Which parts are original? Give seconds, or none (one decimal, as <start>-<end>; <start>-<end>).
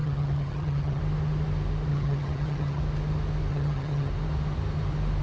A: 1.0-1.9; 2.8-3.5; 4.1-5.2